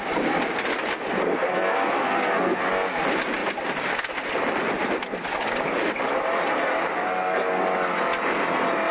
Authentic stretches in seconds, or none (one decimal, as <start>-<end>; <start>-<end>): 0.0-1.5; 2.7-7.1; 7.6-8.9

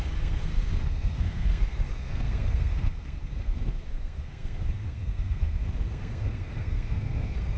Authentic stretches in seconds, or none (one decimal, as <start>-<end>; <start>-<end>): none